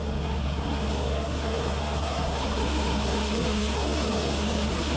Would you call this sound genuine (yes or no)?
no